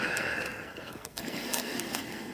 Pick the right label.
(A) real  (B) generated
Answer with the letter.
B